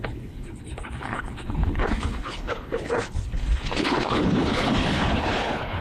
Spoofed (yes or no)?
yes